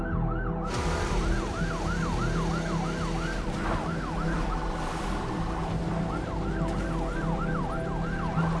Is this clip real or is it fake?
real